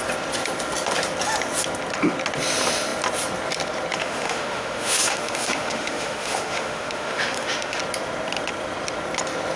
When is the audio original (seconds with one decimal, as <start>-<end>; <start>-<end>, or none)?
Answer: 0.0-4.0; 7.8-9.6

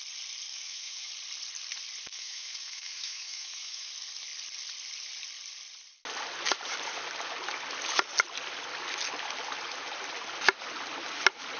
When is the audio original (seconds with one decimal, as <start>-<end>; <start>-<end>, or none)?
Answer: 0.0-0.5; 1.1-2.1; 3.9-11.6

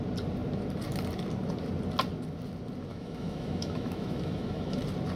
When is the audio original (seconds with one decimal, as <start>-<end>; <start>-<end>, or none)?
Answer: 0.0-2.9; 4.8-5.2

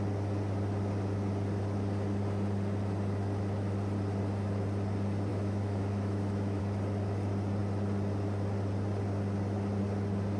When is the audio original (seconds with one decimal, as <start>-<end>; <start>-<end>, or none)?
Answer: 0.0-5.3; 6.6-10.4

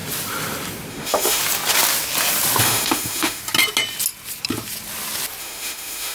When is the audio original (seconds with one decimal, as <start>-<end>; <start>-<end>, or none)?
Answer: 0.0-0.9; 1.4-2.6; 3.4-5.4

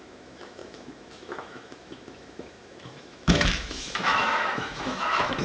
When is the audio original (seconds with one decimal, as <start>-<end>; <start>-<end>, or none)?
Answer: none